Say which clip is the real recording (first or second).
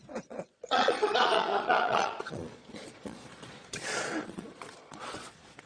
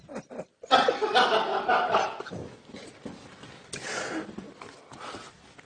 second